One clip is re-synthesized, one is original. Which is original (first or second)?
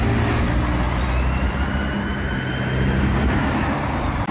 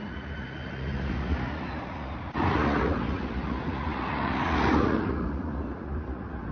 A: first